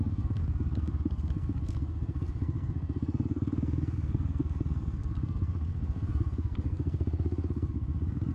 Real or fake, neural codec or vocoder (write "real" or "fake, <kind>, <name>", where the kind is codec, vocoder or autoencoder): fake, codec, SNAC